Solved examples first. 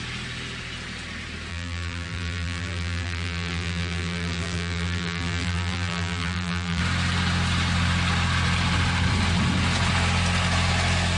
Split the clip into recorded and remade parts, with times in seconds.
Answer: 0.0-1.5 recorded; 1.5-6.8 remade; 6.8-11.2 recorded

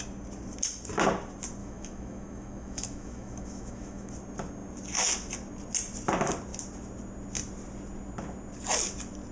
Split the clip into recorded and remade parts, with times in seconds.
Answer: 0.0-1.6 recorded; 1.6-4.1 remade; 4.1-9.3 recorded